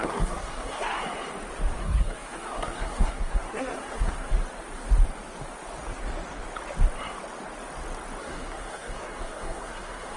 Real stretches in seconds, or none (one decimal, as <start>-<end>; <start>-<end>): 1.0-1.8; 4.3-8.2